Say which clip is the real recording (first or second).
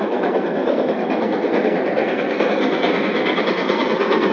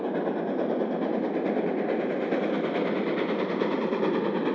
second